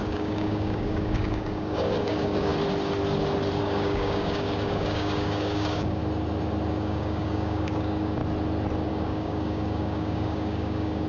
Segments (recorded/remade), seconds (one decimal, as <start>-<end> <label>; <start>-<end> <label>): 0.0-2.5 remade; 2.5-3.6 recorded; 3.6-6.0 remade; 6.0-6.7 recorded; 6.7-8.2 remade; 8.2-8.9 recorded; 8.9-11.1 remade